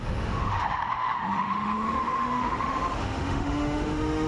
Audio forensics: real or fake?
fake